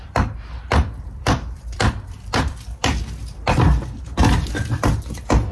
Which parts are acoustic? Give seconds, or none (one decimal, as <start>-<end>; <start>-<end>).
2.9-4.0